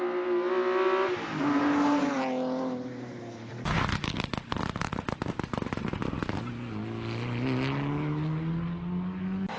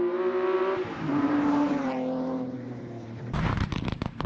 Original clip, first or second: first